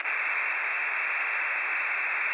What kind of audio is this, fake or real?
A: fake